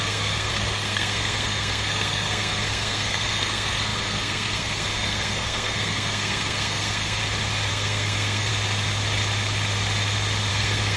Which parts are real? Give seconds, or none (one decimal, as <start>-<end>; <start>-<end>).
7.2-7.7; 8.5-10.5